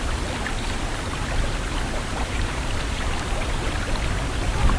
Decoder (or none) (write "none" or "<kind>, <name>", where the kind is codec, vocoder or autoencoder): vocoder, BigVGAN v2